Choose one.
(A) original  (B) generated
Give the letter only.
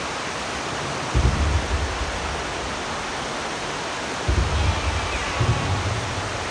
A